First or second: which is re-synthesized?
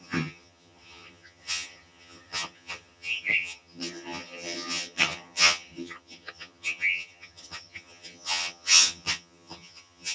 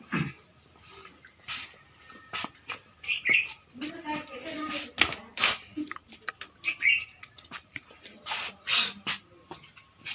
first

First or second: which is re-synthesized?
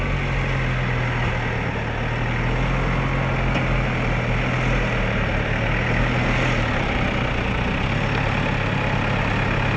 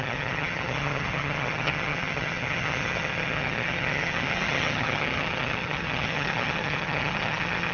second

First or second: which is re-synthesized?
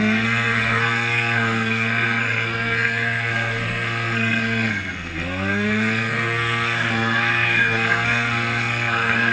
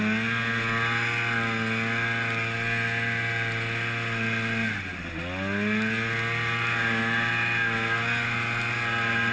first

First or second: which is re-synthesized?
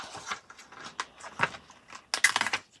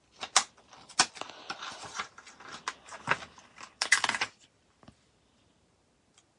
second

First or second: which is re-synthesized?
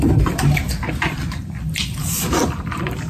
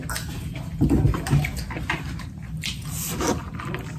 first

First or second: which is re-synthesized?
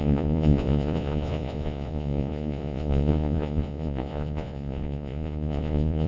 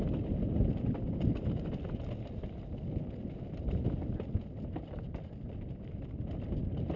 first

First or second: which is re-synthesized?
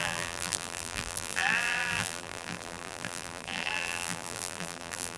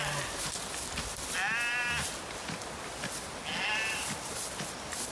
first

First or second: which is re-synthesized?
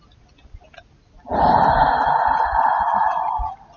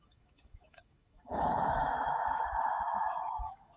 second